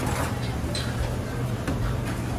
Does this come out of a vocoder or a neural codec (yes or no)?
yes